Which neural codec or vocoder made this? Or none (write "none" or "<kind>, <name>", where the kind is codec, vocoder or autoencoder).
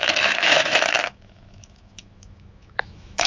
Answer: autoencoder, DAC-VAE